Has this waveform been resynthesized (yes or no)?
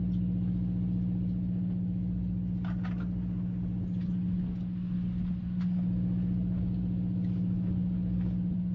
no